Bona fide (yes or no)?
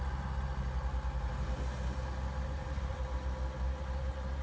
yes